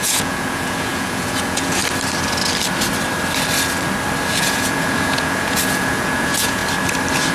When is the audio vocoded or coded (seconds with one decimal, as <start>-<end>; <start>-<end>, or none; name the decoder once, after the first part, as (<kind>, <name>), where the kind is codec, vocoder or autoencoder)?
0.0-1.8 (vocoder, Vocos); 4.3-6.6